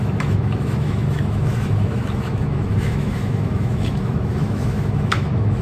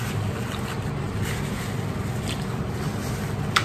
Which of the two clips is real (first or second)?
second